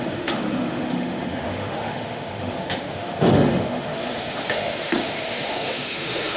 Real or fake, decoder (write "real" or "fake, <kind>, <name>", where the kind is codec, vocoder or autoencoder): fake, autoencoder, DAC-VAE